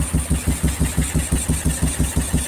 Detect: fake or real real